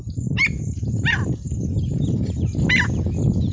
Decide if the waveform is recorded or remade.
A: recorded